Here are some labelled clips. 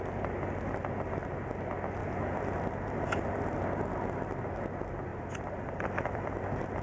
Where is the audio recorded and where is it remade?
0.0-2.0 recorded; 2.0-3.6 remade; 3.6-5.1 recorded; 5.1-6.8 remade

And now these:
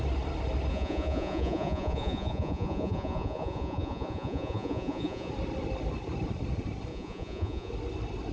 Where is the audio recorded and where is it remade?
0.0-0.7 recorded; 0.7-5.3 remade; 5.3-6.9 recorded; 6.9-7.7 remade; 7.7-8.3 recorded

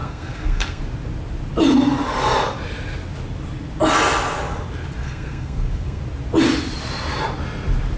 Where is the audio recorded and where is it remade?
0.0-0.8 remade; 0.8-5.0 recorded; 5.0-6.0 remade; 6.0-8.0 recorded

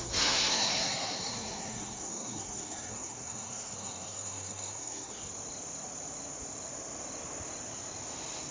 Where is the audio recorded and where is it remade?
0.0-5.2 remade; 5.2-8.5 recorded

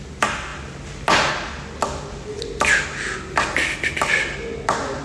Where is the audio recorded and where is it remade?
0.0-5.0 recorded

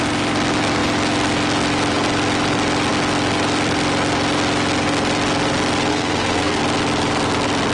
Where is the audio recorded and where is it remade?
0.0-5.9 recorded; 5.9-6.6 remade; 6.6-7.7 recorded

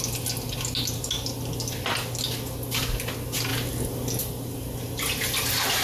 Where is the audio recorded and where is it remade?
0.0-5.8 recorded

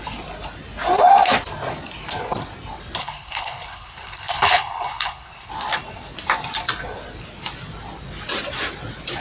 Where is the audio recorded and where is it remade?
0.0-3.0 recorded; 3.0-5.5 remade; 5.5-9.2 recorded